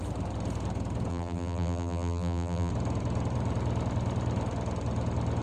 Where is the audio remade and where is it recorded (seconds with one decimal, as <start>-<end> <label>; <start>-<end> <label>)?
0.0-1.1 recorded; 1.1-2.7 remade; 2.7-5.4 recorded